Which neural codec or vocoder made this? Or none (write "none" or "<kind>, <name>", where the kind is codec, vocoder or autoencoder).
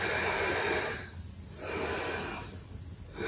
none